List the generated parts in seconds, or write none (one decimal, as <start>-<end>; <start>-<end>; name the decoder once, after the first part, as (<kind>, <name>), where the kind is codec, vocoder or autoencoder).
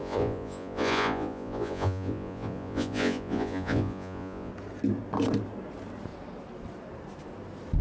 0.0-4.5 (vocoder, Vocos)